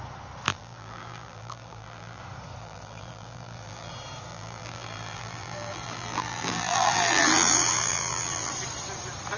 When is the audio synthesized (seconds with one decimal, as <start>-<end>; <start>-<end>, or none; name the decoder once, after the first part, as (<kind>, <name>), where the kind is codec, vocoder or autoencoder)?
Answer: 0.5-2.2 (vocoder, BigVGAN v2); 2.6-3.9; 4.3-8.5